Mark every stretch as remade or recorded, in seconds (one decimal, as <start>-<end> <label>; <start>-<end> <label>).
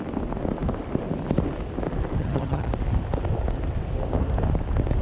0.0-2.2 recorded; 2.2-2.7 remade; 2.7-5.0 recorded